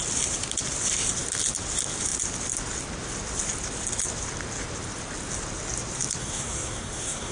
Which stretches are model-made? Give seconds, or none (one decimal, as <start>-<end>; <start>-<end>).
6.2-7.3